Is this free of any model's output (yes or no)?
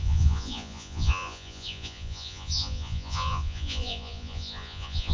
no